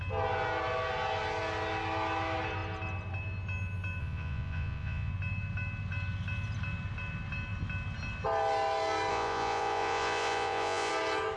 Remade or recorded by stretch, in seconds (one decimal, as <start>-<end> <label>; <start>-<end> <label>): 0.0-4.0 recorded; 4.0-5.1 remade; 5.1-9.1 recorded; 9.1-10.9 remade; 10.9-11.4 recorded